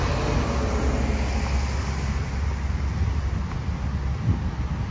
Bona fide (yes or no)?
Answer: yes